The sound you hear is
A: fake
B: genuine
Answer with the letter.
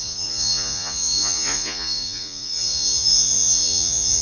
A